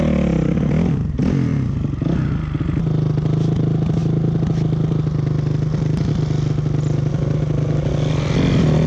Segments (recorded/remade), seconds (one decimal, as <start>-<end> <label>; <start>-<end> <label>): 0.0-8.9 recorded